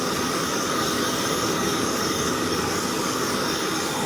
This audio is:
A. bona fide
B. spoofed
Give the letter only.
B